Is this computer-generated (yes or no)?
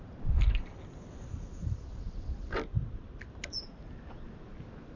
no